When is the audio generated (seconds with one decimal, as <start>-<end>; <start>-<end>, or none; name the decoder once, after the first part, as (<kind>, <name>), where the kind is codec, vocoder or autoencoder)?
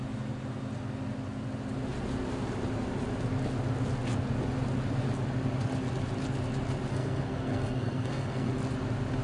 6.9-8.5 (codec, SNAC)